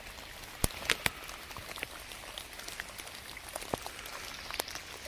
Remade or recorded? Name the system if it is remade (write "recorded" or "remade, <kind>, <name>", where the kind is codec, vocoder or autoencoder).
recorded